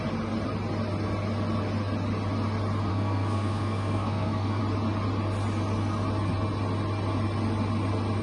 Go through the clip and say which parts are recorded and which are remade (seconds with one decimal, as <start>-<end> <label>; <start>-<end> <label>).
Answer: 0.0-2.9 recorded; 2.9-4.6 remade; 4.6-8.2 recorded

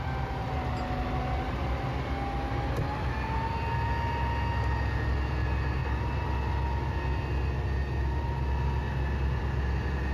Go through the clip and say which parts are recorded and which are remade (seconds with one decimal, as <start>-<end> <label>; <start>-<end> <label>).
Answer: 0.0-10.1 recorded